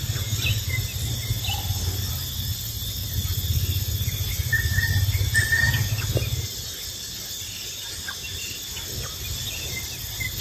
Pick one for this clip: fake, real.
real